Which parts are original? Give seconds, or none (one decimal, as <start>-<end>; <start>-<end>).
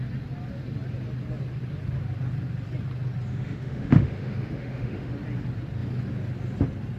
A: 0.0-3.3; 5.1-7.0